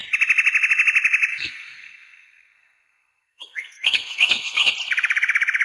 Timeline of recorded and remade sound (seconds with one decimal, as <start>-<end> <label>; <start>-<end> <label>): 0.0-1.3 recorded; 1.3-4.7 remade; 4.7-5.6 recorded